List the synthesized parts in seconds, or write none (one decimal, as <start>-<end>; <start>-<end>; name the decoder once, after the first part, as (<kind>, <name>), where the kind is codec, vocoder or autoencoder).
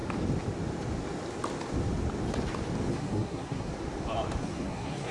2.9-3.7 (codec, SNAC); 4.4-5.1